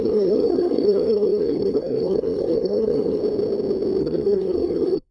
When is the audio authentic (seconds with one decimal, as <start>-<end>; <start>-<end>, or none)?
3.2-4.0